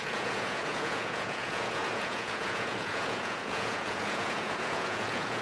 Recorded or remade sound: remade